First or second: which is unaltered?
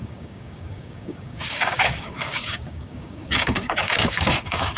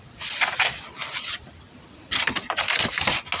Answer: second